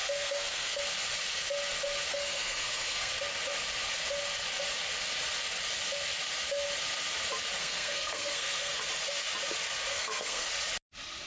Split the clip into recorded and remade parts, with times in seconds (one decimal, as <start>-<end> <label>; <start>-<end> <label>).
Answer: 0.0-0.8 remade; 0.8-2.1 recorded; 2.1-3.1 remade; 3.1-7.6 recorded; 7.6-8.8 remade; 8.8-9.9 recorded; 9.9-10.5 remade; 10.5-11.3 recorded